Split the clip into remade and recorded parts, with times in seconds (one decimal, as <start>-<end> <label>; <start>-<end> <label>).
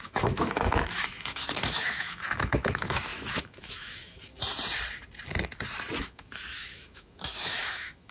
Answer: 0.0-4.3 remade; 4.3-6.0 recorded; 6.0-8.1 remade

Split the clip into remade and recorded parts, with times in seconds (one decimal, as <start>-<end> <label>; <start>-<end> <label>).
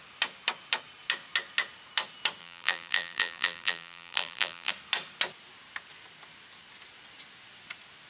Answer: 0.0-2.4 recorded; 2.4-4.7 remade; 4.7-8.1 recorded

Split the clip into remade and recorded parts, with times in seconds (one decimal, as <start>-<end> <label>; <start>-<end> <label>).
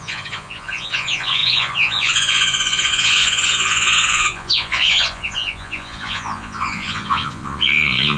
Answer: 0.0-8.2 remade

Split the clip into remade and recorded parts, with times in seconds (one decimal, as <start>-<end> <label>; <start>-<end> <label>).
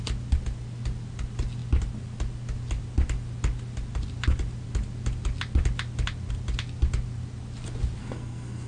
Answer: 0.0-8.0 recorded; 8.0-8.7 remade